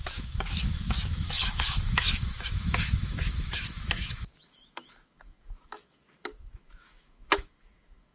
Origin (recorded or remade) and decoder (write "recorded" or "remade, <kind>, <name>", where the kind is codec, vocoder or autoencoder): remade, autoencoder, DAC-VAE